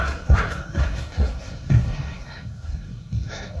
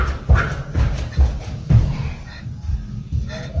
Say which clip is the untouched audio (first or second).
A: second